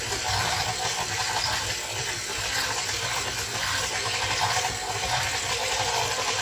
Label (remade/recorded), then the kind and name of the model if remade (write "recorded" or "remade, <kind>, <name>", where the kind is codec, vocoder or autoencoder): remade, vocoder, BigVGAN v2